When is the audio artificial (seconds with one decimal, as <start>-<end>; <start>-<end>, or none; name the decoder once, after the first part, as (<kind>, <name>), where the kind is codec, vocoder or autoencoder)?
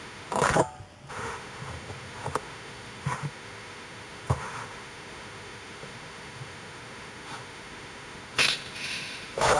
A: 0.0-0.6 (autoencoder, DAC-VAE); 1.1-9.6